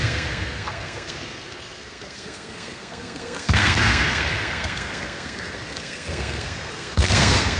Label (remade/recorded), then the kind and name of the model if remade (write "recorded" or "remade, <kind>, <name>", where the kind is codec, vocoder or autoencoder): remade, codec, SNAC